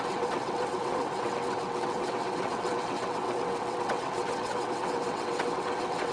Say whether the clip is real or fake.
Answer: fake